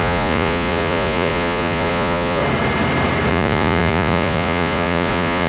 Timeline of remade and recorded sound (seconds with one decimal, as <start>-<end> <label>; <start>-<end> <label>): 0.0-2.4 remade; 2.4-3.3 recorded; 3.3-5.5 remade